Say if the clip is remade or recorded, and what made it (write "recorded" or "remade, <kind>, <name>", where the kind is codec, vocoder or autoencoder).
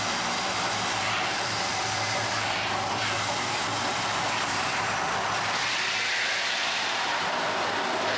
remade, vocoder, BigVGAN v2